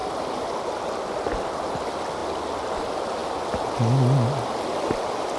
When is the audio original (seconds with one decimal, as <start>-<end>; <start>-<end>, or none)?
0.0-5.4